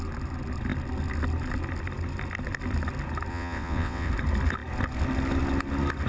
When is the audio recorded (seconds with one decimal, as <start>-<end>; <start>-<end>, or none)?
0.0-3.3; 4.1-6.1